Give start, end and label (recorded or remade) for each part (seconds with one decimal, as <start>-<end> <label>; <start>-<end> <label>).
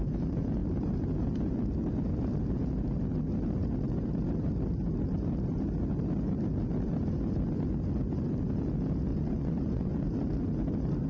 0.0-9.1 recorded; 9.1-10.0 remade; 10.0-11.1 recorded